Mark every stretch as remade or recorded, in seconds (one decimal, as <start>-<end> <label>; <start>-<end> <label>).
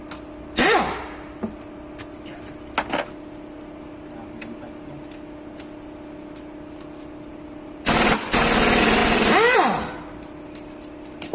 0.0-11.3 recorded